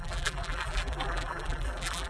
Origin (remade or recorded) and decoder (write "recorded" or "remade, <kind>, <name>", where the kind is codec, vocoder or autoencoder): remade, vocoder, BigVGAN v2